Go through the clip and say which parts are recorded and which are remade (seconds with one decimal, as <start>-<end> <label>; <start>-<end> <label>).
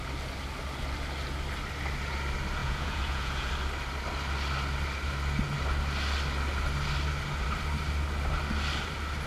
0.0-2.6 recorded; 2.6-3.5 remade; 3.5-9.3 recorded